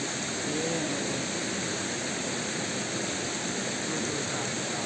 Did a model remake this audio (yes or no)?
no